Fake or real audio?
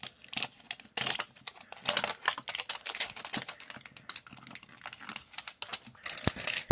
real